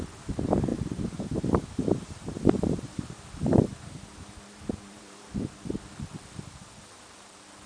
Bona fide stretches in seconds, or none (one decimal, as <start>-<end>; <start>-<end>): 0.0-0.7; 5.3-7.7